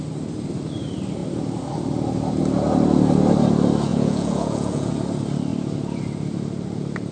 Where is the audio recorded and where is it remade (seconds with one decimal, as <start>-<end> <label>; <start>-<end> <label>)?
0.0-3.9 recorded; 3.9-4.9 remade; 4.9-7.1 recorded